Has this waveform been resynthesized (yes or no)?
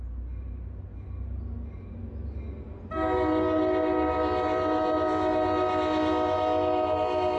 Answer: no